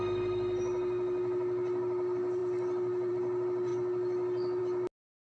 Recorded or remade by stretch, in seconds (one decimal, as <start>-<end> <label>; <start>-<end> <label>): 0.0-5.3 recorded